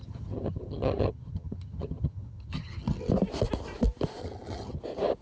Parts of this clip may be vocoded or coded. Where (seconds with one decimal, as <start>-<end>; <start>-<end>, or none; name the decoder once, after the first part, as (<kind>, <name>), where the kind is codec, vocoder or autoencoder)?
0.0-3.1 (vocoder, HiFi-GAN); 4.2-4.8